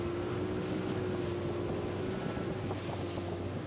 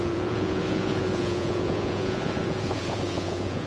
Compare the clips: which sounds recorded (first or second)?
first